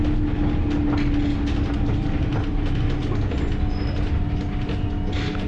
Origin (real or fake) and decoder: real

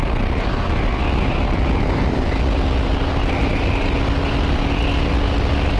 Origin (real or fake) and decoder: real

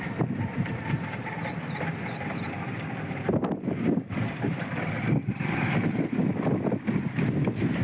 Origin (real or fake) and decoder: fake, vocoder, BigVGAN v2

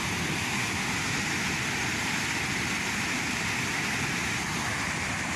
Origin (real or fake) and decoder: real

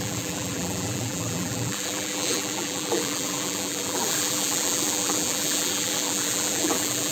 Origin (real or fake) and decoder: fake, vocoder, BigVGAN v2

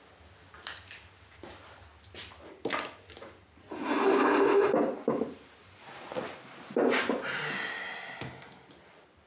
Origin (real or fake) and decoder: real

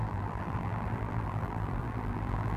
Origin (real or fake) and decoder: fake, vocoder, BigVGAN v2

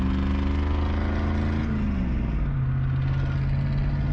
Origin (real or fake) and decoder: real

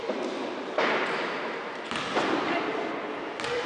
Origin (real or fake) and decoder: real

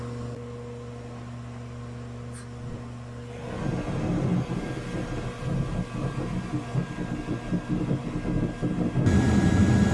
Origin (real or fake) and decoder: real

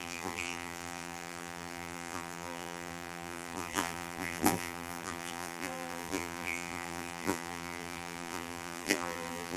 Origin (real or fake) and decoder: fake, vocoder, BigVGAN v2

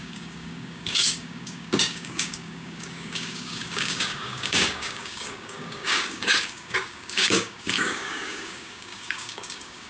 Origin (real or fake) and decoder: fake, codec, DAC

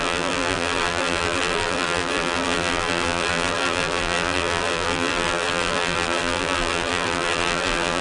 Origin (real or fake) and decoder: fake, vocoder, BigVGAN v2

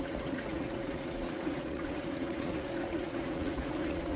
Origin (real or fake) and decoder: fake, vocoder, Vocos